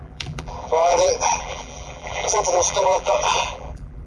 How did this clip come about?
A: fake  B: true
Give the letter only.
A